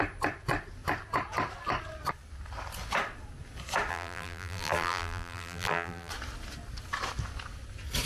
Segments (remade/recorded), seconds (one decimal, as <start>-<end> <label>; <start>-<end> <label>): 0.0-3.9 recorded; 3.9-6.1 remade; 6.1-8.1 recorded